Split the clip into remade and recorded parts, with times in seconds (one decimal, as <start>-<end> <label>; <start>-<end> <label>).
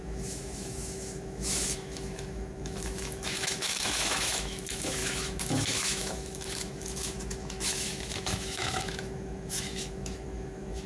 0.0-10.9 remade